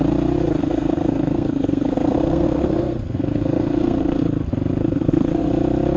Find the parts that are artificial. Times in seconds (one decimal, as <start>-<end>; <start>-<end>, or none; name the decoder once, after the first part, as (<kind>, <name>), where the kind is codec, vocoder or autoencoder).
0.6-4.2 (codec, SNAC); 4.8-5.5